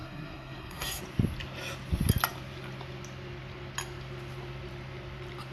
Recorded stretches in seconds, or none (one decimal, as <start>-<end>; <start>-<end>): 1.0-5.5